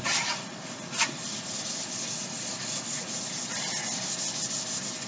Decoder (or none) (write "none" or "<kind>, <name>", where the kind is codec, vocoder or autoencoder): vocoder, BigVGAN v2